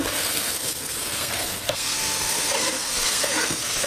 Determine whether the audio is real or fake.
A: fake